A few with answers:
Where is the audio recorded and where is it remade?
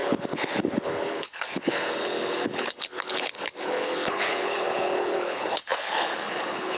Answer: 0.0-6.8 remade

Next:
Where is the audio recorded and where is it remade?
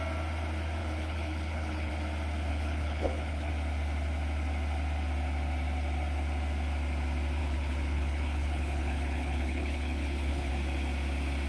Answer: 0.0-0.8 recorded; 0.8-1.9 remade; 1.9-2.5 recorded; 2.5-3.5 remade; 3.5-7.4 recorded; 7.4-10.5 remade; 10.5-11.5 recorded